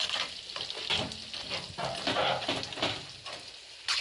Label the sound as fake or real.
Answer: real